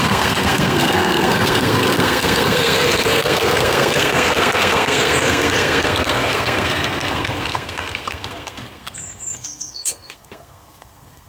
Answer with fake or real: fake